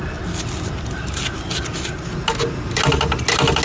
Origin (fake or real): real